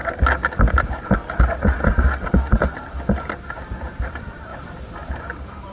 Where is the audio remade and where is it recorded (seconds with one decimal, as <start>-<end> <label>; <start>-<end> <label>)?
0.0-3.4 recorded; 3.4-5.7 remade